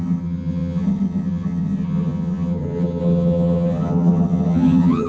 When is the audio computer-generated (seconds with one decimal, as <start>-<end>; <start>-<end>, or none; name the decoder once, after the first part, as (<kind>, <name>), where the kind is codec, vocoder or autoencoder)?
0.0-5.1 (vocoder, HiFi-GAN)